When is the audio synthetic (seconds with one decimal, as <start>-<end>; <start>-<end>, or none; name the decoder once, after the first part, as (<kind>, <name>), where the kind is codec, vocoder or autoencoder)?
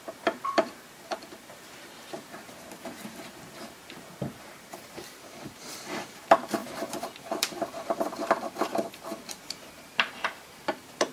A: 0.0-6.6 (vocoder, BigVGAN v2); 7.2-11.1